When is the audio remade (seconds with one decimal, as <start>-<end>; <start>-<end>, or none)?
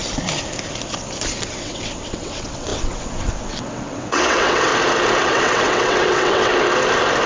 1.5-4.7; 5.2-6.5